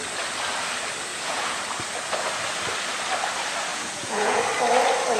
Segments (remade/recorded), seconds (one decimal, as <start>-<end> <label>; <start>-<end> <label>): 0.0-1.1 recorded; 1.1-1.6 remade; 1.6-3.7 recorded; 3.7-4.4 remade; 4.4-5.2 recorded